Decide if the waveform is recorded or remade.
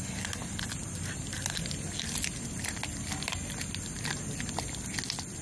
recorded